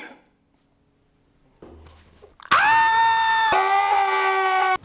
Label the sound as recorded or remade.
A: recorded